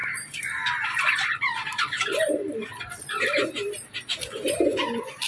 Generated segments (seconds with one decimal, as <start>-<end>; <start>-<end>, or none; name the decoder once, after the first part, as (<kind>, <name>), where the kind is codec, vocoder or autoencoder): none